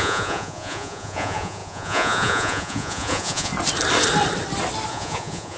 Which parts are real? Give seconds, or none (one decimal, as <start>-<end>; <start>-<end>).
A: 3.5-4.9

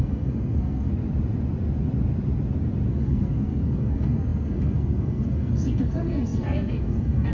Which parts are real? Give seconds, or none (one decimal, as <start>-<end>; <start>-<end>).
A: 0.9-2.9

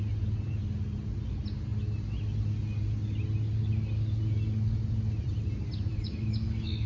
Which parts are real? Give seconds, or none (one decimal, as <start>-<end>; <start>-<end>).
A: 0.0-5.9

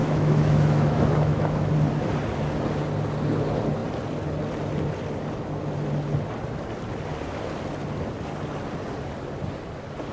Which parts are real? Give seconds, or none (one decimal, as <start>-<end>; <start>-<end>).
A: 1.7-10.1

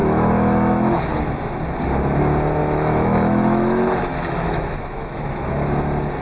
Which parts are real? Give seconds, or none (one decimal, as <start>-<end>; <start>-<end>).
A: 1.6-2.6; 5.5-6.2

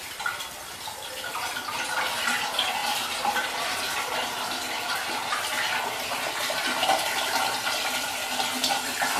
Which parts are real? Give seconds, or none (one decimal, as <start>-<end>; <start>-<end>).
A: 0.0-9.2

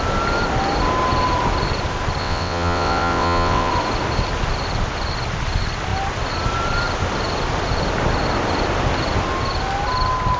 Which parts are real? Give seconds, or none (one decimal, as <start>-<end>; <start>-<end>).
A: 0.0-2.2; 3.7-10.4

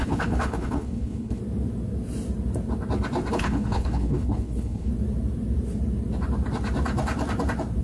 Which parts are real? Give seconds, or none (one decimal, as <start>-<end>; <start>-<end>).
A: 1.4-3.3; 4.9-7.8